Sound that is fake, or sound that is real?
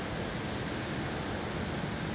real